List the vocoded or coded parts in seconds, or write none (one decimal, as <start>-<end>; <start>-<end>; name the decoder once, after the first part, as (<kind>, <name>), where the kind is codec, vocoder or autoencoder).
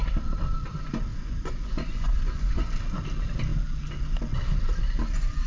1.1-2.6 (vocoder, Vocos)